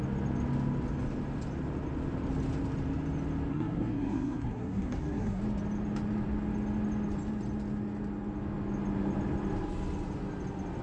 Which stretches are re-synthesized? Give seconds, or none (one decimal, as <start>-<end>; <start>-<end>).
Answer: 3.5-5.4